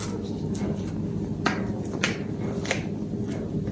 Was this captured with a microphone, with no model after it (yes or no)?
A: yes